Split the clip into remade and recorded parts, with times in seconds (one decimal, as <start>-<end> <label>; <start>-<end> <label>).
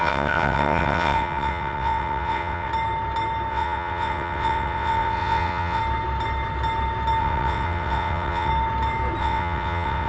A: 0.0-2.7 remade; 2.7-3.5 recorded; 3.5-5.8 remade; 5.8-7.2 recorded; 7.2-8.5 remade; 8.5-9.2 recorded; 9.2-10.1 remade